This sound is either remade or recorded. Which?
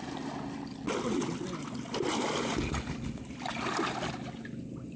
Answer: recorded